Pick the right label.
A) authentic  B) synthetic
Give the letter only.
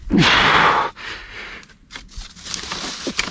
A